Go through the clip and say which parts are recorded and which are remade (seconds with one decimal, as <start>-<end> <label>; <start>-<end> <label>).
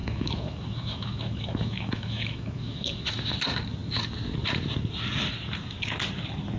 0.0-3.1 remade; 3.1-6.6 recorded